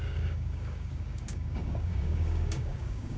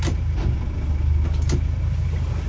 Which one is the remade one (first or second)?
first